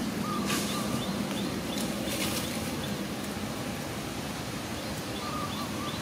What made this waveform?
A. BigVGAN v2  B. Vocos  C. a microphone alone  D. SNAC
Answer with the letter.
A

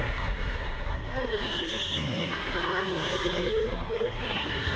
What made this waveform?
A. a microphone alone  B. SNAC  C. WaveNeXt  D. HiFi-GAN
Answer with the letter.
B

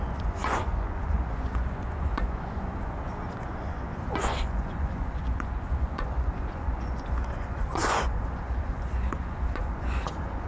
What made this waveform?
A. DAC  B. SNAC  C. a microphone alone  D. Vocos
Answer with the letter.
D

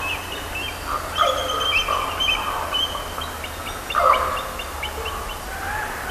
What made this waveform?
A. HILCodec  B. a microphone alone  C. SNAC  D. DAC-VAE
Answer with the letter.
B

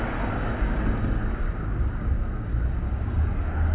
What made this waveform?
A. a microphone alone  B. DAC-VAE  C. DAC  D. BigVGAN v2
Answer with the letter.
C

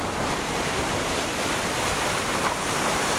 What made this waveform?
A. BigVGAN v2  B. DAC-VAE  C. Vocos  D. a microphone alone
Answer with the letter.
D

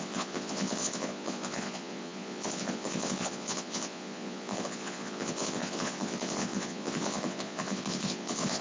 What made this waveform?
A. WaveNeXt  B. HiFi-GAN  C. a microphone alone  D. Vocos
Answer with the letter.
D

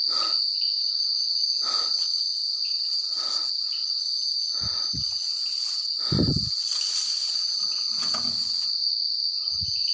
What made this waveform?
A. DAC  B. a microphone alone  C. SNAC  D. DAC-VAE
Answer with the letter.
B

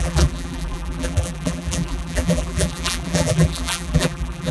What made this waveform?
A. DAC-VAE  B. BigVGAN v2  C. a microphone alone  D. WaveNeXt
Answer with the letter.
B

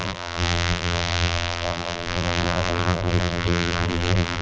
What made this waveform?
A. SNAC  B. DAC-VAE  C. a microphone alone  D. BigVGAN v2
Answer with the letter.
D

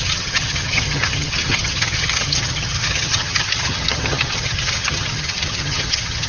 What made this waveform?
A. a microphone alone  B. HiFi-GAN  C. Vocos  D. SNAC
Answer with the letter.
B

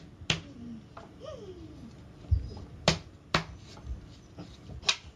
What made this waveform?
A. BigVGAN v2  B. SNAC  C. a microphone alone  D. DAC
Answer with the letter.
C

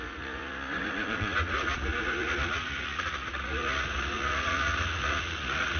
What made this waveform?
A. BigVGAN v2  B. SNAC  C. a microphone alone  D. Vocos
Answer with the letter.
D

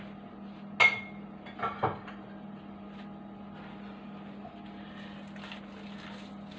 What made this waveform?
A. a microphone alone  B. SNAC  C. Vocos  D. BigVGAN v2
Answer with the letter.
A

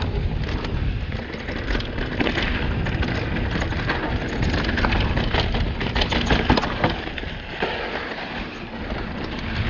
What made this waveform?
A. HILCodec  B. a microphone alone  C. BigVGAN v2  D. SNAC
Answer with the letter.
B